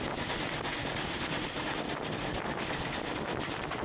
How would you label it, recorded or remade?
recorded